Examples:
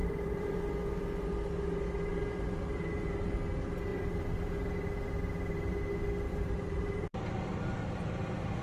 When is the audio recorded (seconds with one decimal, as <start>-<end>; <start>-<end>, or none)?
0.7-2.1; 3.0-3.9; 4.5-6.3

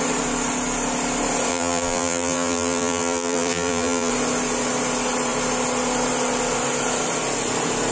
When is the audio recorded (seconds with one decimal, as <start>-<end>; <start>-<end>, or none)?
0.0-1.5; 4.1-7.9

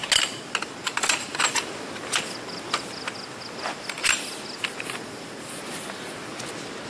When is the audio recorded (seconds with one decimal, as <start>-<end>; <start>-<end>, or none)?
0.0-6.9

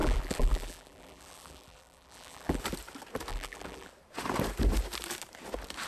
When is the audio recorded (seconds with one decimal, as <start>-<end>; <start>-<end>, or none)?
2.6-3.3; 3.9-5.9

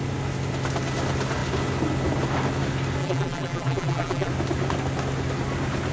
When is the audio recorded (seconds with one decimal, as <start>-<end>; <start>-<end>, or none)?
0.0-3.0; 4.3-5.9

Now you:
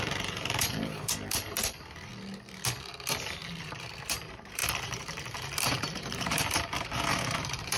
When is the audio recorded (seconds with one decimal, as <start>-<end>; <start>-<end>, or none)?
2.1-3.4

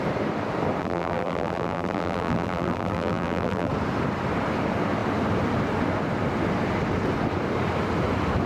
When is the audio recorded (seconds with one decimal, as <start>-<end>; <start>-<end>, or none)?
0.0-0.8; 3.7-8.5

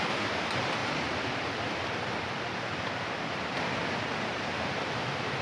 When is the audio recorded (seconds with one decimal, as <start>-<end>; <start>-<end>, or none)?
0.8-4.0